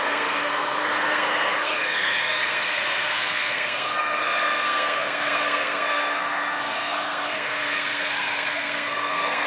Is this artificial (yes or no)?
yes